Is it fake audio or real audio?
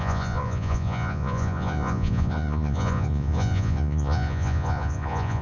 fake